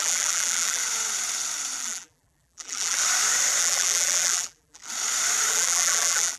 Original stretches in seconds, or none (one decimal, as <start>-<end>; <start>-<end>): 0.8-1.8; 3.0-3.6; 4.8-5.5